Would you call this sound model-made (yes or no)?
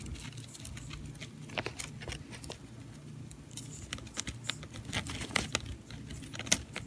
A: no